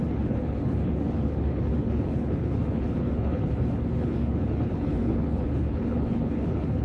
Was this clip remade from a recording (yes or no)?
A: yes